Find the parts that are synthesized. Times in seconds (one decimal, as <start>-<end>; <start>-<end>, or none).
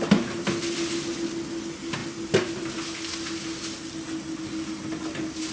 none